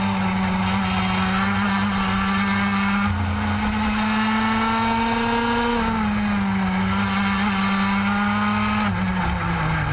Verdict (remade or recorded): recorded